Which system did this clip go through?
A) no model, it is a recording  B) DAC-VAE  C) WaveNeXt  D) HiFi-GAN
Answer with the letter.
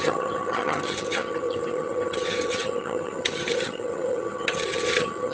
D